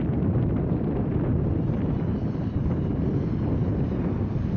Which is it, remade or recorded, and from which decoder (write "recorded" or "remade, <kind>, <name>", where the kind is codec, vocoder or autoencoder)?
remade, vocoder, BigVGAN v2